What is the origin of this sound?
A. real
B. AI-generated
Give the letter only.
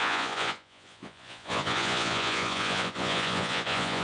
B